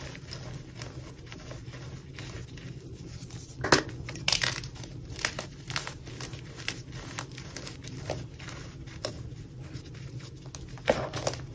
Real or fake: real